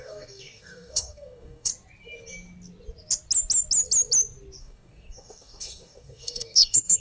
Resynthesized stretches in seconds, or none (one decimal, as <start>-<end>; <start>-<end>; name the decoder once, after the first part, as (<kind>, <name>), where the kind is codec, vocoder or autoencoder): 0.0-1.7 (codec, DAC); 4.6-7.0